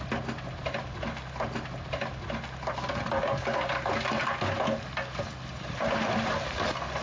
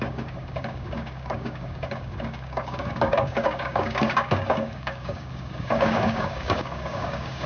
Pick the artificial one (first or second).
second